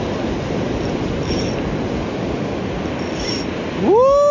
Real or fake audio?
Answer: real